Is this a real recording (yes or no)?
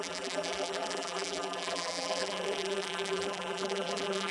no